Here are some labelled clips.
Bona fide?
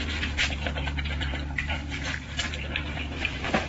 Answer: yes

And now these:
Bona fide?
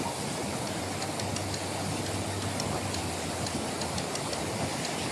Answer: yes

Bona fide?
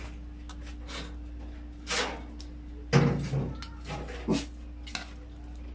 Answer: yes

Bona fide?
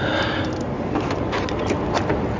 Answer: yes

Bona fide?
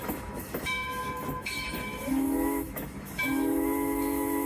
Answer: no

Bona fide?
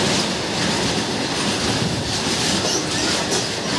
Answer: yes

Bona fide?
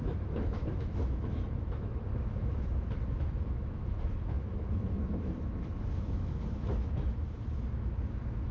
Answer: no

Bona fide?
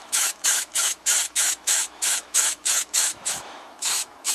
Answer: no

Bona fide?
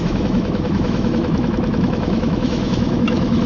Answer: no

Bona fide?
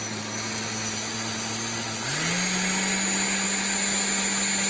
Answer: yes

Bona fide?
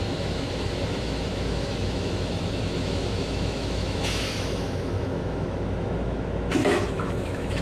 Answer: no